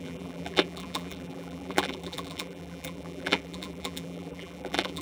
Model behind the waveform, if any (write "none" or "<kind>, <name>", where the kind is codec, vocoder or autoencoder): vocoder, BigVGAN v2